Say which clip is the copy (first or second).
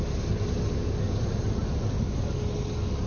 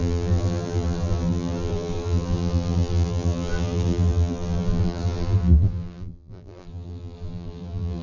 second